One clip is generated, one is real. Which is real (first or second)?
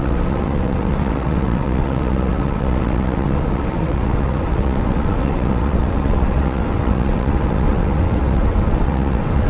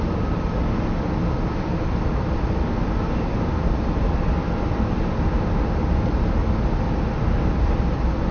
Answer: second